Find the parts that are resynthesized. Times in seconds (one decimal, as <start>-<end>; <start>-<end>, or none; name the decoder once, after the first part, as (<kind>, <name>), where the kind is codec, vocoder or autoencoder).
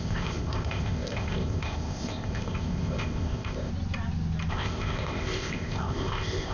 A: 0.0-3.7 (codec, ZipCodec); 4.5-6.5